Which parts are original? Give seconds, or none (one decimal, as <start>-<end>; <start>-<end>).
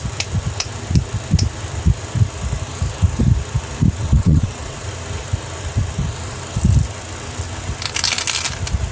0.0-4.0; 4.9-8.9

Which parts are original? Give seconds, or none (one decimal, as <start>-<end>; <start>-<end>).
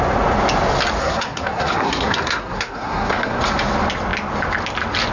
0.0-1.0; 3.4-5.1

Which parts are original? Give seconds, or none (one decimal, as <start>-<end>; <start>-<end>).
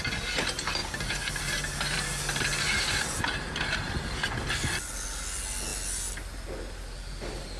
0.0-7.6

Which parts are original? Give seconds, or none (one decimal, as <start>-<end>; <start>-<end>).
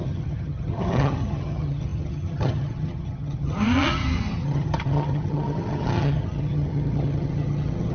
none